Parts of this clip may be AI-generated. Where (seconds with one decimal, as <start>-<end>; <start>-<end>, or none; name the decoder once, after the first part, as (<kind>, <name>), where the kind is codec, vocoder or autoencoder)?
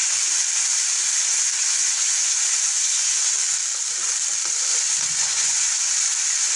1.8-3.3 (vocoder, Vocos); 4.7-5.8